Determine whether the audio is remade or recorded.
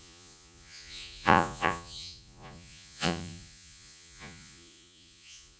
remade